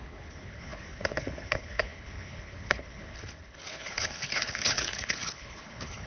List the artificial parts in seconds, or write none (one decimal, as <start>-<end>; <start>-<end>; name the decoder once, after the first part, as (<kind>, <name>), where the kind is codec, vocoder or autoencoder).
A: 0.0-6.1 (codec, HILCodec)